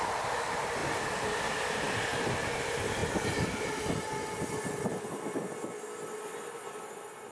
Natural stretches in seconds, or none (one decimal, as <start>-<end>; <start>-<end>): 0.0-7.3